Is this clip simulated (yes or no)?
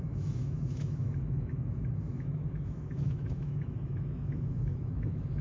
yes